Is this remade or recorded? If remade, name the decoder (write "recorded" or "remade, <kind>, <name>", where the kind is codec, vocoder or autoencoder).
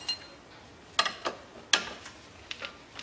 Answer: recorded